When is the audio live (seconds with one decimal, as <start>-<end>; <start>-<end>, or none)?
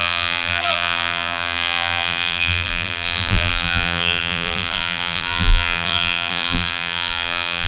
none